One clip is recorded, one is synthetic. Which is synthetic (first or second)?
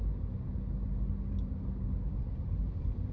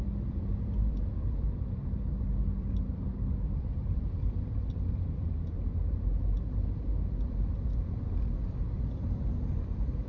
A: second